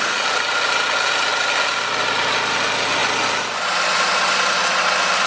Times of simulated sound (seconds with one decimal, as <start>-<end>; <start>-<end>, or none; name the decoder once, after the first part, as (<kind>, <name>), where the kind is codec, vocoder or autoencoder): none